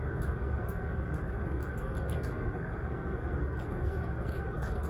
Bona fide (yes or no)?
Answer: no